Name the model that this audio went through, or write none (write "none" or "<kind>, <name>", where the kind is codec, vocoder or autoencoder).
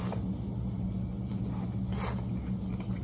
none